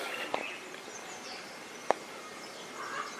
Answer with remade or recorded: recorded